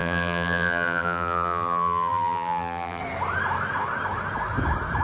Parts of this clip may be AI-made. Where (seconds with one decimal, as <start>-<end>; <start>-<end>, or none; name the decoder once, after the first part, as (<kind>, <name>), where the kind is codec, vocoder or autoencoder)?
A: 0.0-3.0 (vocoder, BigVGAN v2)